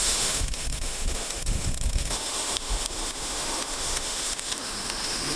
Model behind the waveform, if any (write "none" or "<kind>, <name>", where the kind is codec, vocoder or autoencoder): autoencoder, DAC-VAE